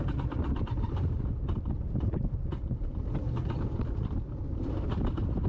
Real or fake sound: real